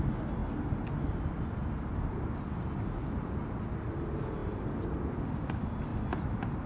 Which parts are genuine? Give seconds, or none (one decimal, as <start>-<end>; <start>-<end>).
0.0-6.7